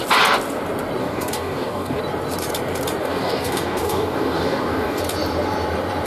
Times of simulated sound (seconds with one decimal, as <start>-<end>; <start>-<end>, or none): 1.0-2.0; 3.0-5.0